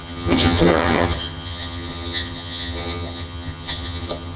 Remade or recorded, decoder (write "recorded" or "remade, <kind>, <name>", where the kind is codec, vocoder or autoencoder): remade, vocoder, HiFi-GAN